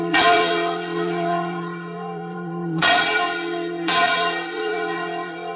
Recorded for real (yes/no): no